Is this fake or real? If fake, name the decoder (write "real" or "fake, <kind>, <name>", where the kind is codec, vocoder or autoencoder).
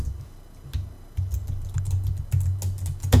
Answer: real